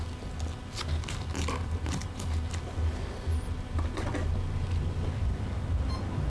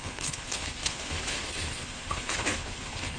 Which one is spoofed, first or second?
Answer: second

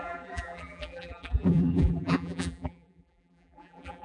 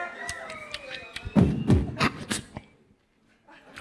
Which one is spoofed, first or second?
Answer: first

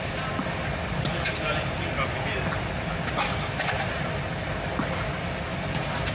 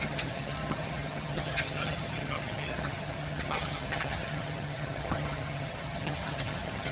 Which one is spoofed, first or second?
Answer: second